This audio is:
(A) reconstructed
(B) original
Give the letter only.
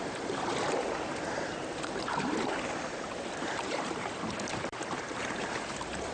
A